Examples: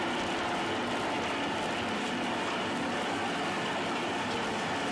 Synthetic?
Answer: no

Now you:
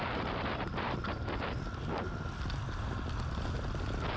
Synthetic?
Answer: no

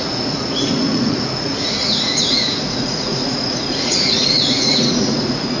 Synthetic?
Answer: yes